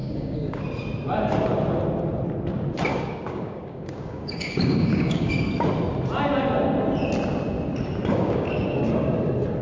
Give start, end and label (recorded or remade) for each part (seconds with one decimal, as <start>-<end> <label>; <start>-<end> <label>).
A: 0.0-0.6 remade; 0.6-2.9 recorded; 2.9-5.3 remade; 5.3-8.1 recorded; 8.1-8.8 remade; 8.8-9.6 recorded